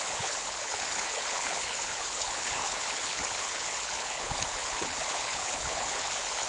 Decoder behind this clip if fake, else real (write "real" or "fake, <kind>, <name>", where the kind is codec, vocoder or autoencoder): fake, codec, HILCodec